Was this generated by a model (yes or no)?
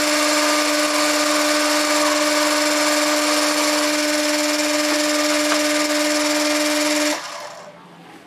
no